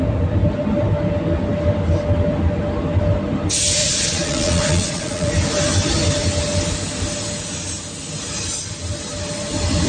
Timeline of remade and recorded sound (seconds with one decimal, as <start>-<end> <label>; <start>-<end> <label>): 0.0-3.8 recorded; 3.8-5.3 remade; 5.3-9.9 recorded